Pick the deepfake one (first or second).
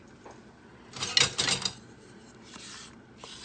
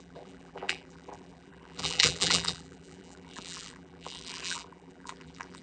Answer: second